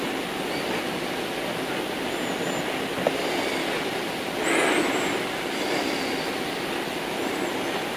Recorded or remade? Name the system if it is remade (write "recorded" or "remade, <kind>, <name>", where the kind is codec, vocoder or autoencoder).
recorded